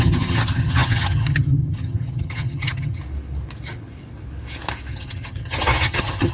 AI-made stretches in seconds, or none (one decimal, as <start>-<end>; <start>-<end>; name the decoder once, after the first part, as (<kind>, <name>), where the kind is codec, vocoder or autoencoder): 0.0-3.0 (vocoder, HiFi-GAN); 4.9-6.3